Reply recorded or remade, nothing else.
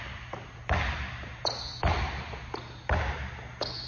recorded